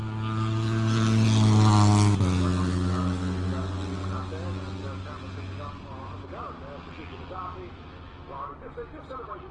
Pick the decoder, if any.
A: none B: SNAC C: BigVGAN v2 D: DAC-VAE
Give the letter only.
A